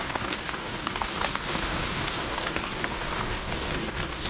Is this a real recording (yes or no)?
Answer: no